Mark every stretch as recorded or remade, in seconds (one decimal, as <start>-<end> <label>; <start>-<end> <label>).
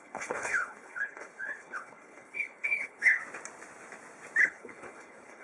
0.0-3.2 remade; 3.2-4.4 recorded; 4.4-5.4 remade